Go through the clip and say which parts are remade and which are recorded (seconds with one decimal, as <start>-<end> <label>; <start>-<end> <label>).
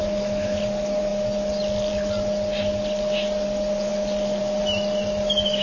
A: 0.0-0.6 remade; 0.6-5.6 recorded